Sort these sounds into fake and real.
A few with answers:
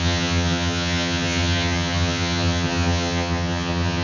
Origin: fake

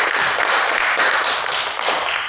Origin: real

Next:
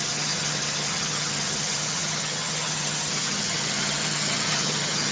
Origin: fake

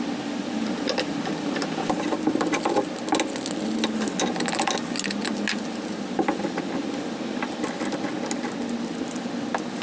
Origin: real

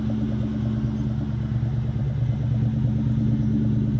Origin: real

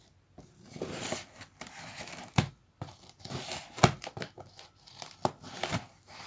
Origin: real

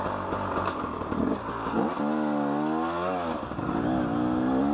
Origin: real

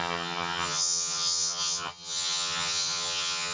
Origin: fake